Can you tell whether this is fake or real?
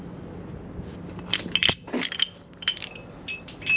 real